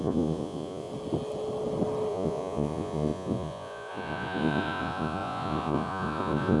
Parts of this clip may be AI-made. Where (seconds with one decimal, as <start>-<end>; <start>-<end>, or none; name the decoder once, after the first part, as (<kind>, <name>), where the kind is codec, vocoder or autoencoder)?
0.0-0.9 (vocoder, Vocos); 2.1-6.6